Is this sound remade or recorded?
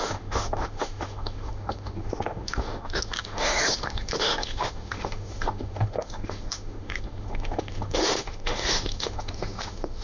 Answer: remade